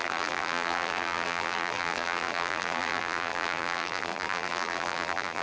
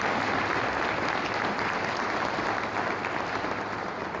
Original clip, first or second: second